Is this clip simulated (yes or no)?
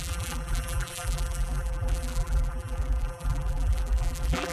yes